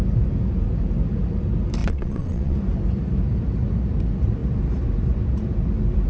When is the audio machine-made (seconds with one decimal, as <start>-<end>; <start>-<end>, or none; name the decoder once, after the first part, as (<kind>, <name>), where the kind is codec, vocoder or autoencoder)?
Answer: 1.8-2.6 (vocoder, WaveNeXt)